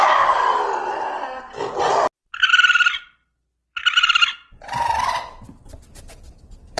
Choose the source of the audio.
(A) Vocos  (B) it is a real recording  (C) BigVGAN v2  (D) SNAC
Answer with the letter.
B